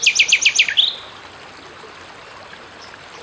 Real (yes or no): yes